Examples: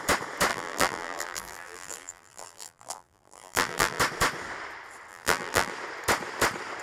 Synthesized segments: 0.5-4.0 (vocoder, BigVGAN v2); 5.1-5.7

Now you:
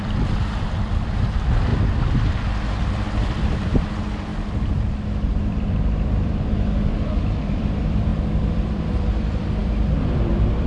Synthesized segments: 0.0-1.7 (vocoder, BigVGAN v2); 2.8-4.3; 5.4-10.7

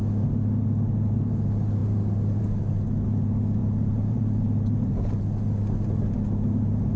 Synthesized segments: 3.6-5.2 (vocoder, BigVGAN v2)

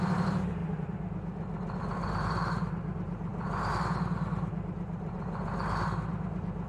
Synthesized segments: 0.0-0.6 (vocoder, BigVGAN v2); 1.8-6.7

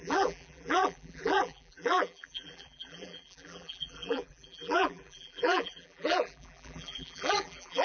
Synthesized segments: 0.0-7.8 (vocoder, BigVGAN v2)

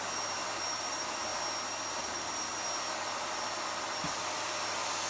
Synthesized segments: 0.0-1.3 (vocoder, BigVGAN v2); 2.0-2.5; 4.0-5.1

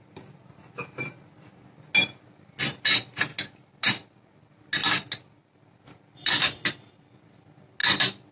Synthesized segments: none

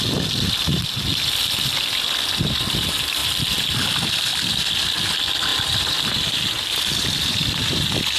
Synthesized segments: 5.5-8.2 (vocoder, BigVGAN v2)